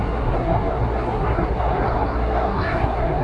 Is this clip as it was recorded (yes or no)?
no